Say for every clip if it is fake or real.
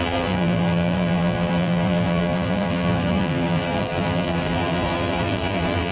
fake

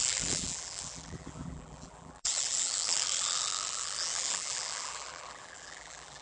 fake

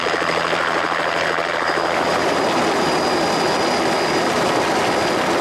real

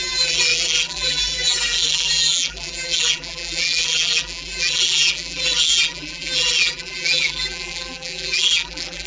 fake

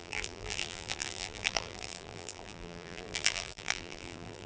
fake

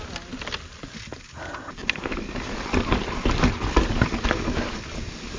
real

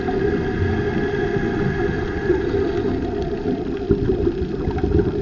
real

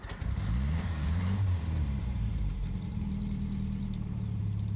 fake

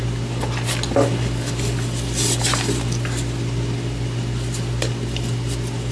real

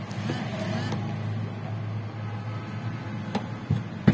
real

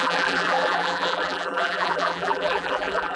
fake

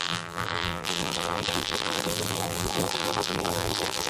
fake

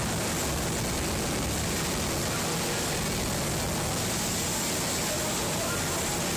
real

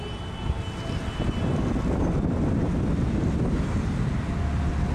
real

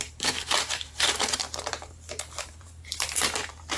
fake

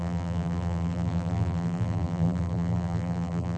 fake